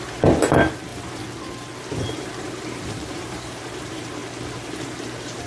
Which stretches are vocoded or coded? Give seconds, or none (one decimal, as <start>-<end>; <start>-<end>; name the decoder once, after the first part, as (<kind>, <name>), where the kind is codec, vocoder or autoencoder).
0.0-0.9 (vocoder, BigVGAN v2); 1.9-4.2; 4.8-5.5